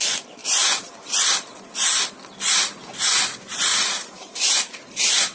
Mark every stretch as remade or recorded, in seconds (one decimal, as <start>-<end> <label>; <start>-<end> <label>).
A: 0.0-3.7 recorded; 3.7-4.6 remade; 4.6-5.3 recorded